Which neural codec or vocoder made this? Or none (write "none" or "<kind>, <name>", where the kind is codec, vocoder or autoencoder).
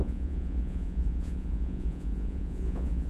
vocoder, Vocos